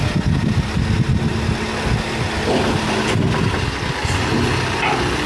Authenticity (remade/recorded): recorded